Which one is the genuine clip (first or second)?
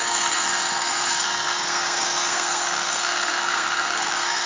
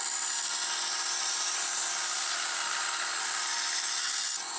second